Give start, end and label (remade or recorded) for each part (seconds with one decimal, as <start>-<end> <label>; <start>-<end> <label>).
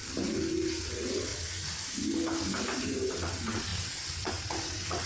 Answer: 0.0-0.8 recorded; 0.8-1.3 remade; 1.3-3.1 recorded; 3.1-5.1 remade